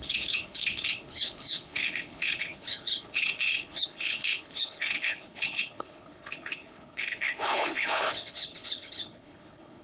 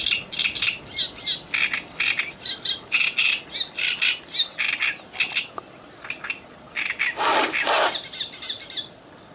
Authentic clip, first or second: second